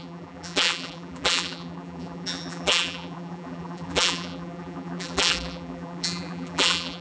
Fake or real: fake